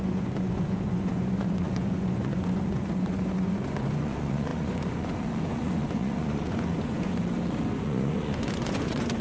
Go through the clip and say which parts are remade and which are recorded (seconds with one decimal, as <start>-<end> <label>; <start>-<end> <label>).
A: 0.0-7.1 remade; 7.1-7.8 recorded; 7.8-9.2 remade